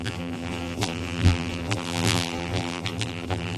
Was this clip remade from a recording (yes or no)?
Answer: yes